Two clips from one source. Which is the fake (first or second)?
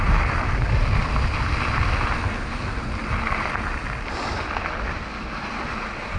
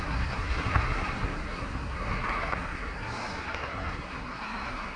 second